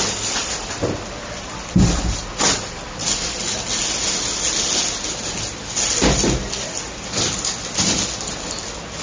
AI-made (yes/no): no